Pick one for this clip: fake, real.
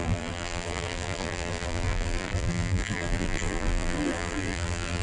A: fake